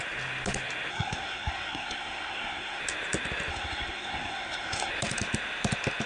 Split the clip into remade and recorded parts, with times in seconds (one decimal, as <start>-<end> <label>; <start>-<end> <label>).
0.0-0.9 recorded; 0.9-2.8 remade; 2.8-3.5 recorded; 3.5-4.9 remade; 4.9-6.1 recorded